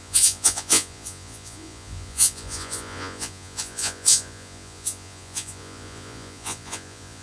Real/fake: fake